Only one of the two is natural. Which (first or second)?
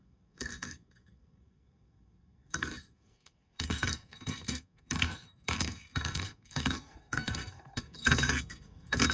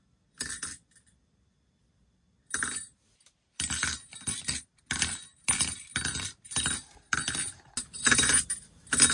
second